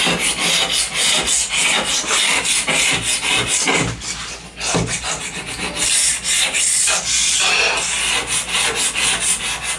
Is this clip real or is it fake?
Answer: real